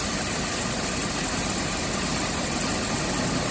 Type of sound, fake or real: real